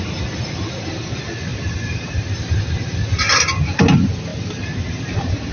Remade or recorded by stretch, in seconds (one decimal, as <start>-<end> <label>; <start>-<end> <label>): 0.0-1.5 recorded; 1.5-2.7 remade; 2.7-4.3 recorded; 4.3-5.5 remade